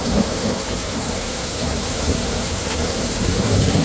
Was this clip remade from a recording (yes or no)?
yes